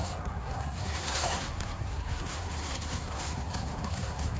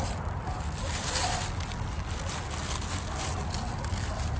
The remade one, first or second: first